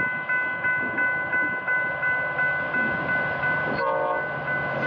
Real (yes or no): yes